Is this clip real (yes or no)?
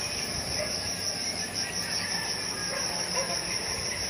no